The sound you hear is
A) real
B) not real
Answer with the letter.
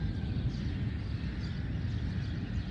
A